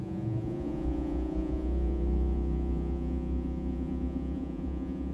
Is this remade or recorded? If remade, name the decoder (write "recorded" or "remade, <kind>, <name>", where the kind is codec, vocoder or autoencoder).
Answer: remade, vocoder, Vocos